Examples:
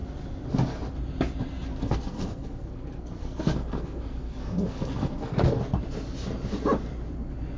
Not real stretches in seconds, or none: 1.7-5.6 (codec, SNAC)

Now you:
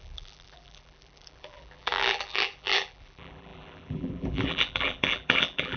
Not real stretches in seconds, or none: 0.0-5.8 (vocoder, BigVGAN v2)

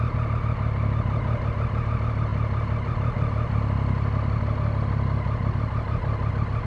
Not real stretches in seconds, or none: none

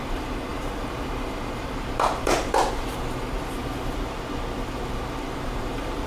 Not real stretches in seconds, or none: 0.0-3.6 (vocoder, BigVGAN v2); 4.7-6.1

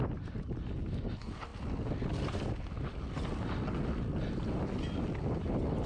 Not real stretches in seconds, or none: none

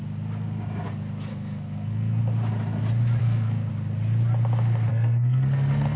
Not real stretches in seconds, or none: 1.3-2.2 (codec, SNAC); 3.2-3.7; 4.9-6.0

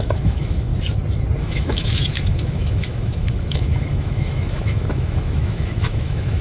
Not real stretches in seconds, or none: 0.0-0.7 (autoencoder, DAC-VAE); 1.4-6.4